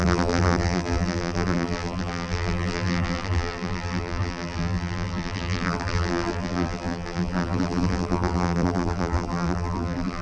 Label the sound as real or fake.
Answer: fake